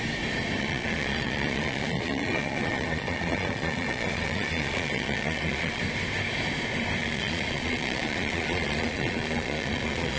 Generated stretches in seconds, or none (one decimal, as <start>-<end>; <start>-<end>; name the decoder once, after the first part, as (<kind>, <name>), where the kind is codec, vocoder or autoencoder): 0.6-5.8 (vocoder, Vocos); 7.0-10.2